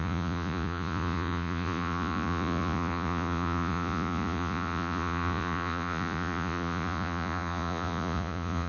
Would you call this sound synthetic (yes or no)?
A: yes